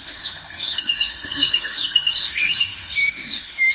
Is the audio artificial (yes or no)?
yes